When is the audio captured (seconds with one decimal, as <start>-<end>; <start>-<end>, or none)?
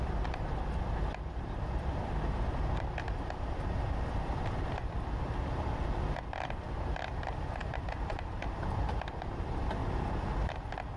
9.8-11.0